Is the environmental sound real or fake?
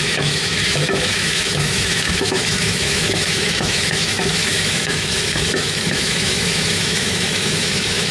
fake